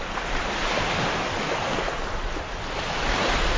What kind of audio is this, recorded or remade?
recorded